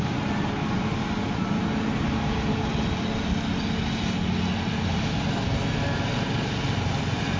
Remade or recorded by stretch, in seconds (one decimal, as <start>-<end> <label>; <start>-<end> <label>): 0.0-7.4 recorded

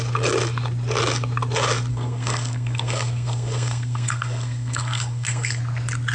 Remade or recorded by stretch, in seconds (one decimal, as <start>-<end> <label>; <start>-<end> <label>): 0.0-1.9 recorded; 1.9-5.6 remade; 5.6-6.1 recorded

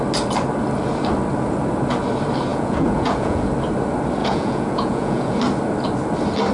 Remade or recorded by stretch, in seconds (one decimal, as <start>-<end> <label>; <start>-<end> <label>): 0.0-2.5 recorded; 2.5-3.5 remade; 3.5-4.2 recorded; 4.2-5.4 remade; 5.4-6.5 recorded

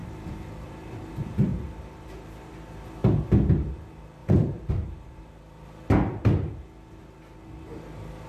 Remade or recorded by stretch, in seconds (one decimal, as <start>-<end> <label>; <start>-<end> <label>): 0.0-1.1 remade; 1.1-1.5 recorded; 1.5-2.4 remade; 2.4-4.2 recorded; 4.2-4.7 remade; 4.7-8.3 recorded

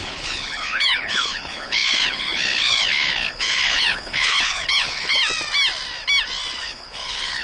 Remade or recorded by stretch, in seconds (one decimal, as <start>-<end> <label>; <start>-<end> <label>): 0.0-5.2 remade; 5.2-6.6 recorded; 6.6-7.4 remade

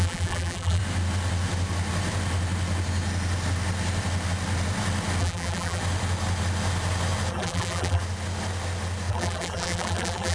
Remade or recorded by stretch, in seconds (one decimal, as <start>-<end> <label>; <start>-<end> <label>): 0.0-0.8 remade; 0.8-5.2 recorded; 5.2-5.8 remade; 5.8-7.3 recorded; 7.3-8.0 remade; 8.0-9.1 recorded; 9.1-10.3 remade

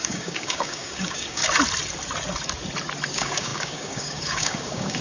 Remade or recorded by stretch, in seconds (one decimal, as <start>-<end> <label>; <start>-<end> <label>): 0.0-1.4 remade; 1.4-3.1 recorded; 3.1-5.0 remade